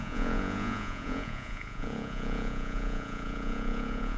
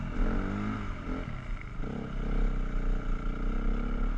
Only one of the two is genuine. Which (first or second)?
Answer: second